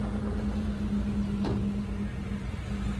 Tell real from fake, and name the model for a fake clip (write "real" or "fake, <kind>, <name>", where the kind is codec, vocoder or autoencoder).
real